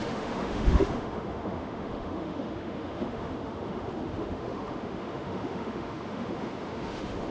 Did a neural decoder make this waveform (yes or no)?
yes